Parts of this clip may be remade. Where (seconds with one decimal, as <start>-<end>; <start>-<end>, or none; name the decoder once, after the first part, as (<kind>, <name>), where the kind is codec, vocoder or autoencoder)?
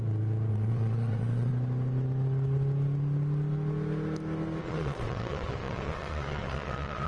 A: 0.5-1.5 (vocoder, WaveNeXt); 4.6-7.1